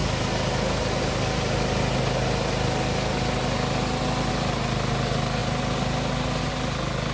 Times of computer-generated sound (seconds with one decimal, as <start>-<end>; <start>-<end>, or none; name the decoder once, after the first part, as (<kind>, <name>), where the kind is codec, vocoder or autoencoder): none